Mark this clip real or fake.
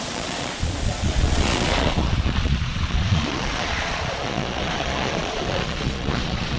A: fake